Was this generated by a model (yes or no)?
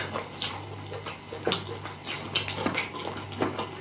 no